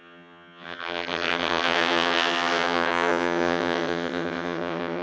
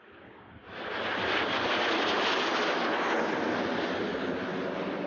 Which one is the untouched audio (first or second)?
second